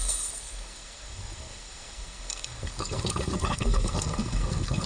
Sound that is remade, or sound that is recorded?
remade